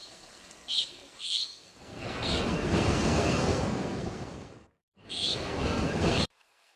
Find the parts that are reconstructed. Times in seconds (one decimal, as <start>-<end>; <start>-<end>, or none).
0.0-6.8